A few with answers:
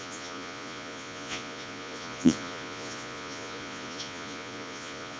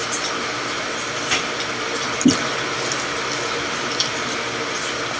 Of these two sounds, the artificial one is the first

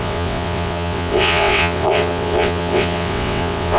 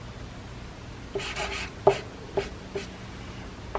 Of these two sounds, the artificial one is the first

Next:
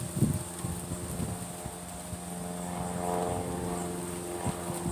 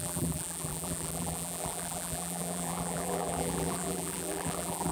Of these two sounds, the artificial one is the second